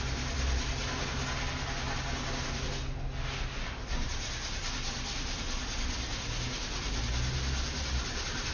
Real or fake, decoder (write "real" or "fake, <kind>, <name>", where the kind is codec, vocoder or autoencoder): real